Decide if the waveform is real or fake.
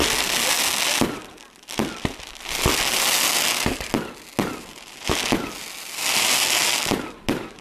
real